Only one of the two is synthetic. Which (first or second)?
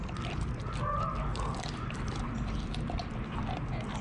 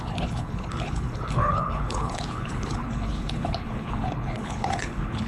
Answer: second